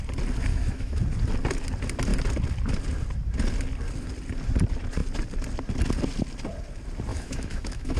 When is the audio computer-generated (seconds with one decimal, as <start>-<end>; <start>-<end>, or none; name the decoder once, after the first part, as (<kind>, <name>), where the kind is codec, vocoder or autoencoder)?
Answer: 0.5-1.0 (autoencoder, DAC-VAE); 7.1-8.0